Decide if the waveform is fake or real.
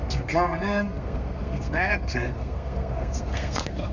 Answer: fake